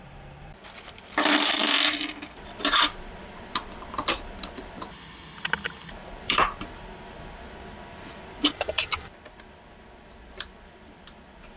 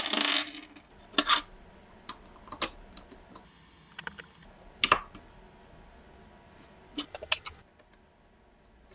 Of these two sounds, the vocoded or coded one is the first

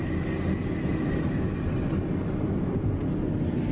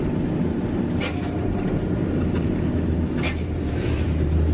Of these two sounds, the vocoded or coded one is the second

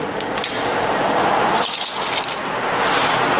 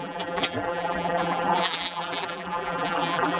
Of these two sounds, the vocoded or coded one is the second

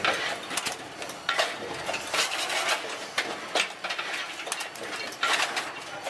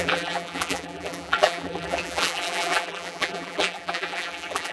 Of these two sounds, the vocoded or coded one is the second